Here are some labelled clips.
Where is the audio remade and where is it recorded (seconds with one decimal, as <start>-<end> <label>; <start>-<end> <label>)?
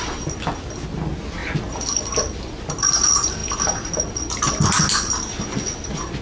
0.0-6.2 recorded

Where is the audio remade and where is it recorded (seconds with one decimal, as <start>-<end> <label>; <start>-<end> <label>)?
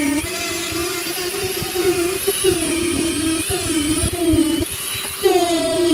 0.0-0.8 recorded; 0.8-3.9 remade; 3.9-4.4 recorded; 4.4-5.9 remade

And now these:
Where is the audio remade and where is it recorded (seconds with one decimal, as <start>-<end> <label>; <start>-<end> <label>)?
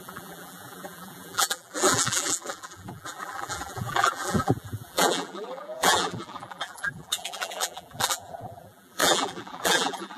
0.0-10.2 remade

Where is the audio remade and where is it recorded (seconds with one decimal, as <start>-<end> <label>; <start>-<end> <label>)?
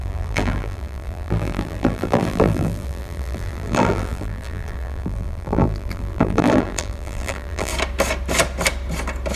0.0-7.7 remade; 7.7-9.4 recorded